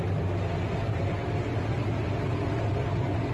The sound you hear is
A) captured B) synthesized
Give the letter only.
A